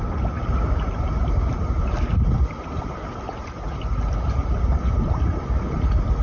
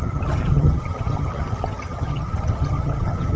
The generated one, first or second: second